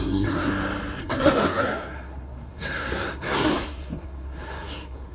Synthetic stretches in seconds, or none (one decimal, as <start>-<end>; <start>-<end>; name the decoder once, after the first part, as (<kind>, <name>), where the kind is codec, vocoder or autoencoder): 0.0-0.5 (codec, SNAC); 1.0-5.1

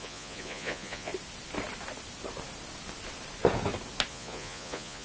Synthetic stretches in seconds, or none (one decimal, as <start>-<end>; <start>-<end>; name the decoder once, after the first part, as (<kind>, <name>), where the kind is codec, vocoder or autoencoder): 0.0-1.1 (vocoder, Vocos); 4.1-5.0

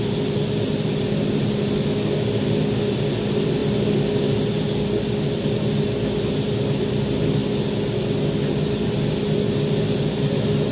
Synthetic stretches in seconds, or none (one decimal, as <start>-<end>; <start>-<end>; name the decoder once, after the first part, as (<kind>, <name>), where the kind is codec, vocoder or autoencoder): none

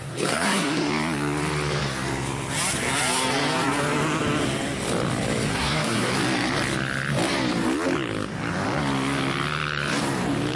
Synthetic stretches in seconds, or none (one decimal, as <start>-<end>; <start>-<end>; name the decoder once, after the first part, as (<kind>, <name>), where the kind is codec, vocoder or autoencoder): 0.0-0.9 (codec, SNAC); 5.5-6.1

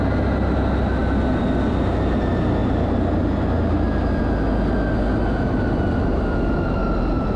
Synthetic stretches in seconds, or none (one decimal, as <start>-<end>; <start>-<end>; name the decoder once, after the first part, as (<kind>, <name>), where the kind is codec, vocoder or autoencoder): none

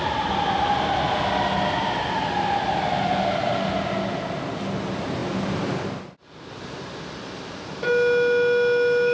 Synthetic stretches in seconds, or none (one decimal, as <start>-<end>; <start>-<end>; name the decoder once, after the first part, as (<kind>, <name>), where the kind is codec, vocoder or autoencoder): none

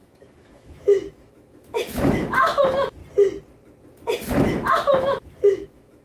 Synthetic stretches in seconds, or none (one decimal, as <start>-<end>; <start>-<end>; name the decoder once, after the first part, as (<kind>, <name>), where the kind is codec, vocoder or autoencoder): 0.0-3.0 (autoencoder, DAC-VAE); 4.7-6.0